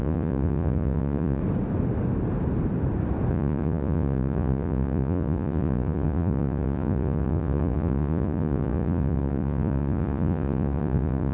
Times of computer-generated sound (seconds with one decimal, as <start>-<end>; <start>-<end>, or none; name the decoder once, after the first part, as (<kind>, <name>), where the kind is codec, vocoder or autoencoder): 0.0-1.4 (vocoder, Vocos); 3.3-11.3